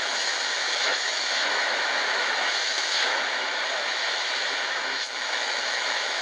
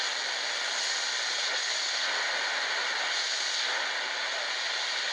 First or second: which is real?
second